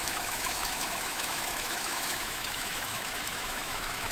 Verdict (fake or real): fake